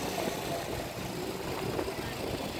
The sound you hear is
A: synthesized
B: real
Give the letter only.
B